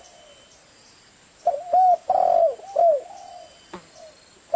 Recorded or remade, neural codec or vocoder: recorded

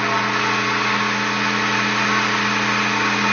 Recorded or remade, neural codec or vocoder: recorded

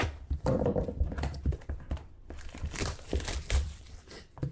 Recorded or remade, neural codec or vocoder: remade, vocoder, BigVGAN v2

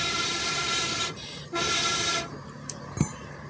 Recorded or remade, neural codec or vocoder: remade, vocoder, BigVGAN v2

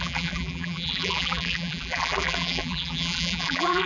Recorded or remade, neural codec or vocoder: remade, vocoder, BigVGAN v2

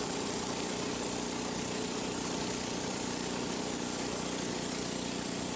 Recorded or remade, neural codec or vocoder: remade, vocoder, BigVGAN v2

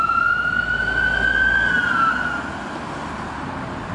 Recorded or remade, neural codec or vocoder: remade, vocoder, BigVGAN v2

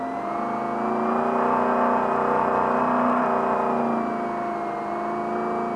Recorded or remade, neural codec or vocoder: recorded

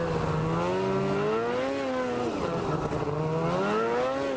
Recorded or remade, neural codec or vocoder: recorded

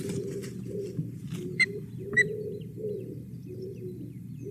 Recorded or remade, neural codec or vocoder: remade, vocoder, BigVGAN v2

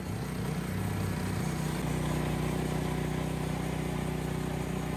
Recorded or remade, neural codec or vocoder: recorded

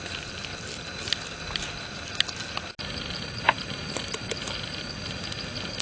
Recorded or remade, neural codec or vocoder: recorded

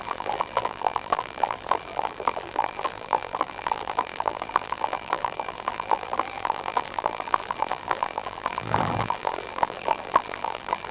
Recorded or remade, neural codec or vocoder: remade, vocoder, BigVGAN v2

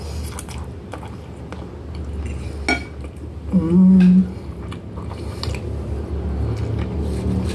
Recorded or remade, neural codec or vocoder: recorded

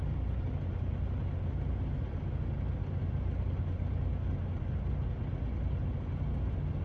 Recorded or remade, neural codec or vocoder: recorded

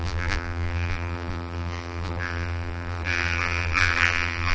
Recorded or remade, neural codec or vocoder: remade, vocoder, BigVGAN v2